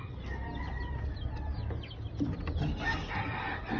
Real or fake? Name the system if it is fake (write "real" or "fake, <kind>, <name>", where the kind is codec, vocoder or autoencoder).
real